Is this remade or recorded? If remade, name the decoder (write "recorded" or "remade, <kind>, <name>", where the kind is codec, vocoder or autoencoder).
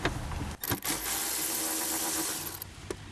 recorded